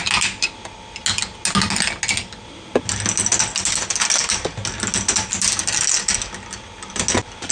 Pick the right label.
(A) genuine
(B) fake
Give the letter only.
A